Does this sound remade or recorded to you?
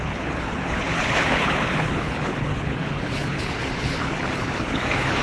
remade